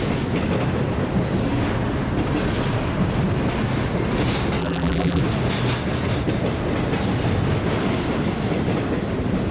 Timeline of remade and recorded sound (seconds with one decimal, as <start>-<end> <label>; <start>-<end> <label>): 0.0-4.6 recorded; 4.6-5.2 remade; 5.2-9.5 recorded